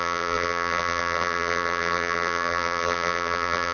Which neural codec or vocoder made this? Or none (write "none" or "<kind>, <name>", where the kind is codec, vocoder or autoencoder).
vocoder, BigVGAN v2